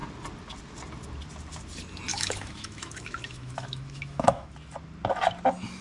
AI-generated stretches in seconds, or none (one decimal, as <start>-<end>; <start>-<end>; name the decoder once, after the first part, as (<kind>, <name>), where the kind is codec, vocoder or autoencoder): 2.1-4.5 (autoencoder, DAC-VAE)